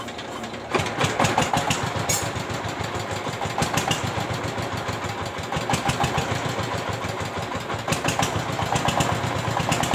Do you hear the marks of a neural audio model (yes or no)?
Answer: no